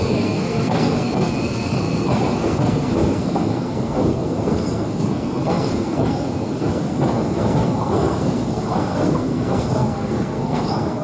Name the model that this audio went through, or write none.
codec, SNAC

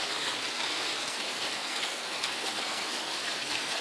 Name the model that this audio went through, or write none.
codec, SNAC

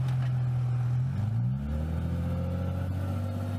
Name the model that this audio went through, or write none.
none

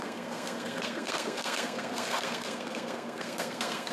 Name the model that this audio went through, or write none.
codec, SNAC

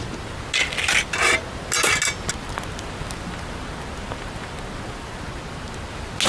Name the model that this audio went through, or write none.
none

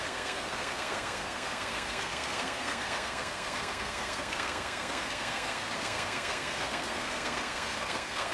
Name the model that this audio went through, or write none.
codec, SNAC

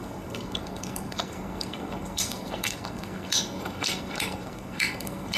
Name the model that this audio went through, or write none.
codec, SNAC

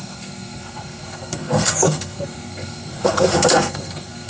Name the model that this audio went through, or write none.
codec, SNAC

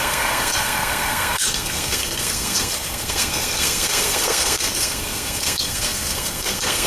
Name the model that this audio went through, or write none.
codec, SNAC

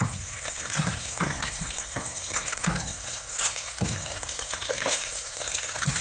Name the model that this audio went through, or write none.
codec, SNAC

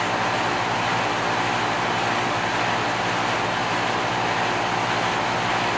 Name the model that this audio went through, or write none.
none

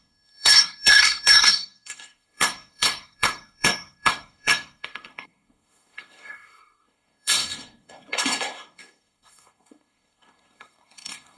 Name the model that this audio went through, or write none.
codec, SNAC